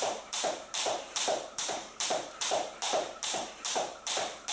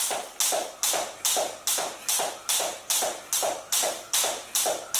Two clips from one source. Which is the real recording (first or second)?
second